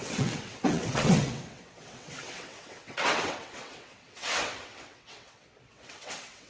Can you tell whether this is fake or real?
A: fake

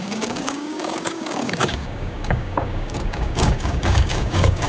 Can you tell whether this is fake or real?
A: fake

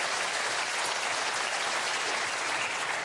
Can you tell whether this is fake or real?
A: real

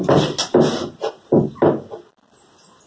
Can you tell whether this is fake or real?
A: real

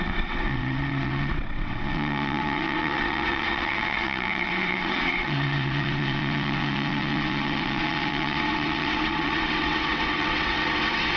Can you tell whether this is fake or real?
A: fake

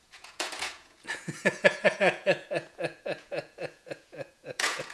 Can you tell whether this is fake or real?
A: fake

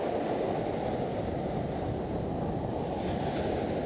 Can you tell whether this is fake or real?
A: real